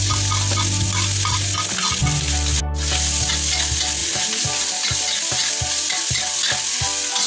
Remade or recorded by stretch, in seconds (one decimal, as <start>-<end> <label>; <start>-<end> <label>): 0.0-4.0 recorded; 4.0-4.7 remade; 4.7-7.3 recorded